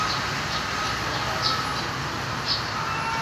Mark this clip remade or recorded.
recorded